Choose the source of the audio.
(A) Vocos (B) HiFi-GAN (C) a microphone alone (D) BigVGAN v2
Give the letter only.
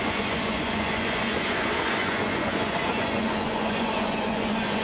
A